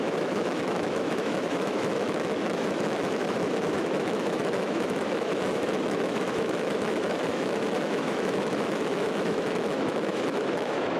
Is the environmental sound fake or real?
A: fake